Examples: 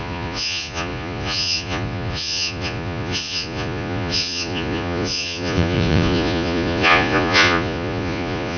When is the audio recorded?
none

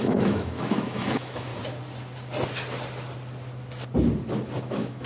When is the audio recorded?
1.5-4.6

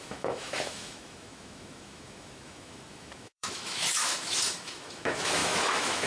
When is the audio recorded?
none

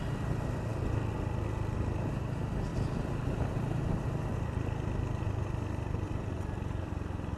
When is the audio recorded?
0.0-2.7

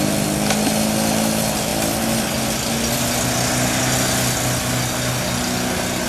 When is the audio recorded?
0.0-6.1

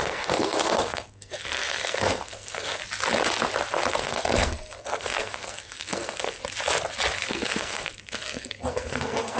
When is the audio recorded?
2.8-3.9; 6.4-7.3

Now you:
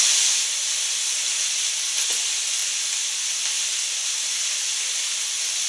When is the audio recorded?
0.0-5.7

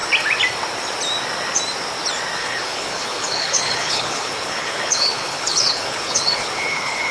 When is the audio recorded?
0.0-2.4